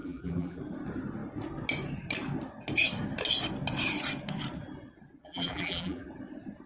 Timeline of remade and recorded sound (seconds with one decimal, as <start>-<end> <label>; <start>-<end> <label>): 0.0-0.6 remade; 0.6-5.2 recorded; 5.2-6.1 remade; 6.1-6.7 recorded